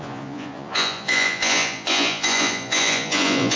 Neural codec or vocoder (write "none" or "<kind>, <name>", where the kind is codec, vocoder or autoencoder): vocoder, Vocos